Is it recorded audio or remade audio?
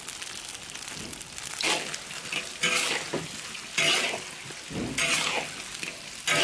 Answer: recorded